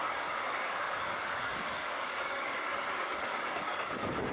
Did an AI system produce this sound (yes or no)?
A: yes